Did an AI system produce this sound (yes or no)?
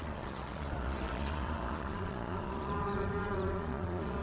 yes